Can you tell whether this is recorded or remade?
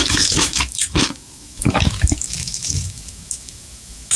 remade